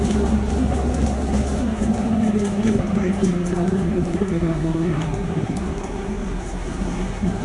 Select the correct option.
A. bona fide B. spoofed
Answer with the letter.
B